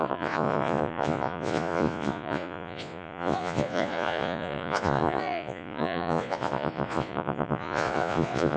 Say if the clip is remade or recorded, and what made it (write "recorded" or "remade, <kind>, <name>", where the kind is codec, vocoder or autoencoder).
remade, vocoder, Vocos